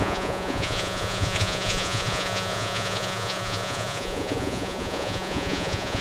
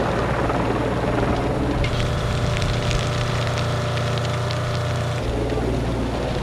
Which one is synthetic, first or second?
first